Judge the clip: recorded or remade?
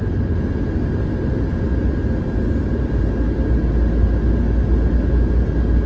recorded